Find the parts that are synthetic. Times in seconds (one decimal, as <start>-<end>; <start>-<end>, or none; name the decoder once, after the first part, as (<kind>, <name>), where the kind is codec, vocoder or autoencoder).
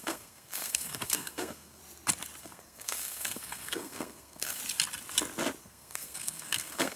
0.0-1.8 (codec, SNAC); 2.4-4.6; 5.6-7.0